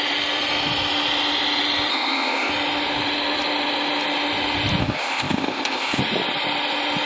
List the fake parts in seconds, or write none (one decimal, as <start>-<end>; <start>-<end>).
1.9-2.5; 4.8-6.0